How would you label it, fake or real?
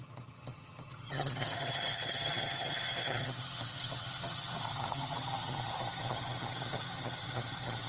fake